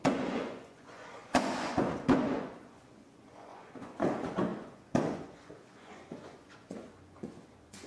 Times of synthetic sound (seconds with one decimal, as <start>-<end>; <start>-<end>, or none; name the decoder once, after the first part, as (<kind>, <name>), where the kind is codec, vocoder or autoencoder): 0.0-7.9 (vocoder, Vocos)